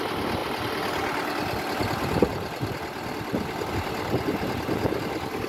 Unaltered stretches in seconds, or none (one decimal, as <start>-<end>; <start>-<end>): 0.0-5.5